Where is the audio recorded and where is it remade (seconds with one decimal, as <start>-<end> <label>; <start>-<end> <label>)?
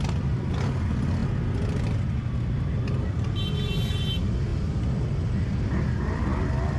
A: 0.0-1.2 remade; 1.2-3.9 recorded; 3.9-4.5 remade; 4.5-6.0 recorded; 6.0-6.8 remade